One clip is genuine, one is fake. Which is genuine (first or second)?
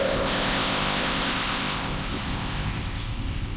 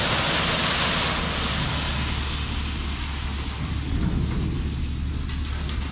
second